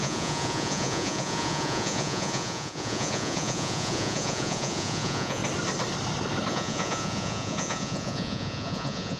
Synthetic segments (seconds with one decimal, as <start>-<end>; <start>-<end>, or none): 0.0-5.4; 6.5-9.2